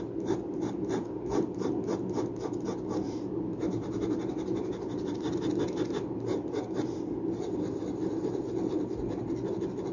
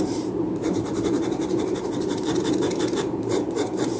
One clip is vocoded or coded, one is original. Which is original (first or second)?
first